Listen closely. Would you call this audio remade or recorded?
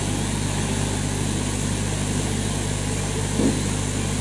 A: recorded